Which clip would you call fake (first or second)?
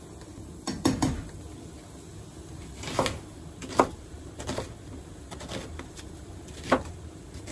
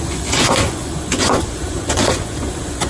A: second